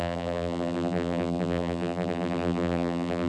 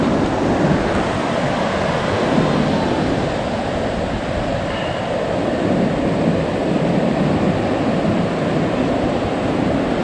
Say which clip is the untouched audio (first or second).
second